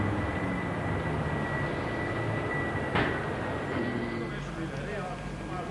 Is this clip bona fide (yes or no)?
yes